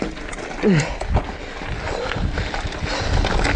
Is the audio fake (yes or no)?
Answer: no